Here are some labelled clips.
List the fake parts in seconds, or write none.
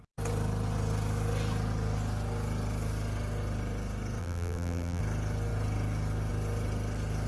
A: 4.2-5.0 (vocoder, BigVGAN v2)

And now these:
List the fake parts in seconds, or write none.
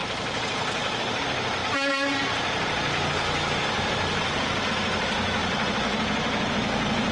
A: 0.0-1.2 (vocoder, BigVGAN v2); 1.6-4.7; 5.4-6.5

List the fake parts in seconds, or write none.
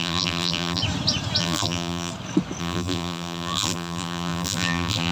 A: 0.0-0.8 (vocoder, BigVGAN v2); 1.4-2.1; 2.6-5.1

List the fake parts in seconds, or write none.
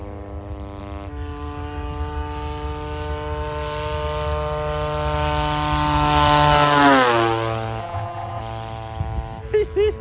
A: 7.8-8.4 (vocoder, BigVGAN v2)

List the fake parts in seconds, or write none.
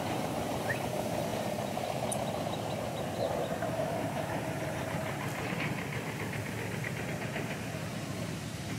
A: 0.0-1.3 (vocoder, BigVGAN v2); 3.7-5.0; 8.0-8.8